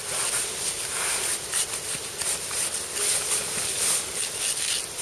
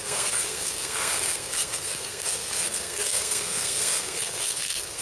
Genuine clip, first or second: first